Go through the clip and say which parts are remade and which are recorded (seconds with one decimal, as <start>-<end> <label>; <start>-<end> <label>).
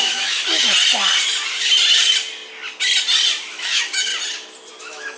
0.0-0.4 remade; 0.4-3.5 recorded; 3.5-4.1 remade; 4.1-4.8 recorded; 4.8-5.2 remade